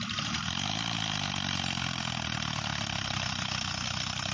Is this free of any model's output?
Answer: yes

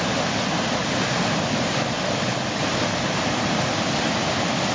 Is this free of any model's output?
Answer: yes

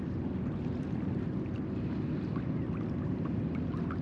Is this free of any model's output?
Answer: yes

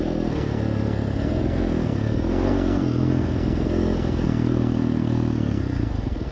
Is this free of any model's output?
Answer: no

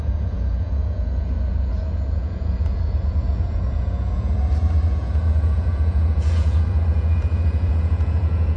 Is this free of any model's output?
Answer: no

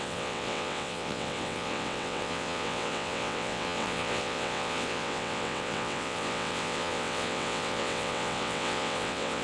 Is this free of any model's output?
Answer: no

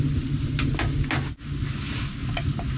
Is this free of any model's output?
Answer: yes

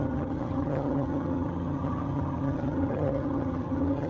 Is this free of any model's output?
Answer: no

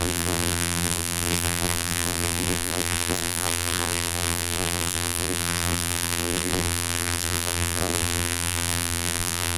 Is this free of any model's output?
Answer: no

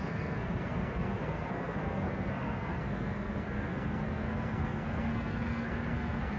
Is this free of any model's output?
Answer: no